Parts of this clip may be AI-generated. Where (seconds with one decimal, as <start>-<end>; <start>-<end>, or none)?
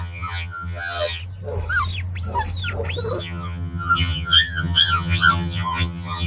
0.0-1.2; 3.2-6.3